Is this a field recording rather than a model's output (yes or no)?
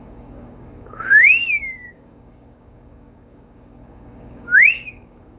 no